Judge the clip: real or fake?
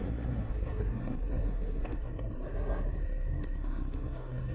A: fake